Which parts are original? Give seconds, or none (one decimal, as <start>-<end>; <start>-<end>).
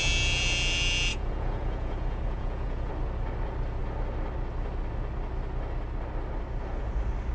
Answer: 0.0-1.1; 2.9-7.3